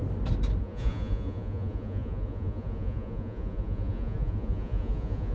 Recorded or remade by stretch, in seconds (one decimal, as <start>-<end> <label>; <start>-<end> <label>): 0.0-0.6 recorded; 0.6-5.3 remade